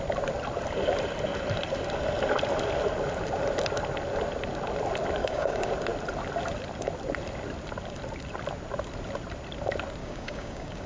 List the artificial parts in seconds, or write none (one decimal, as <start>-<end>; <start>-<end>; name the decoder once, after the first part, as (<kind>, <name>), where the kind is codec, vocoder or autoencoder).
5.2-5.7 (codec, DAC); 10.0-10.9